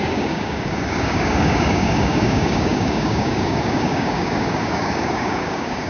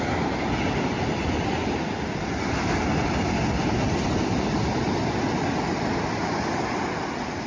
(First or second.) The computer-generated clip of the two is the first